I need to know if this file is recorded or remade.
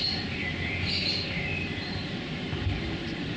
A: recorded